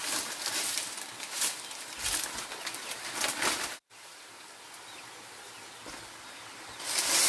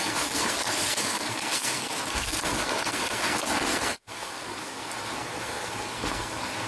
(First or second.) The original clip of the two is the first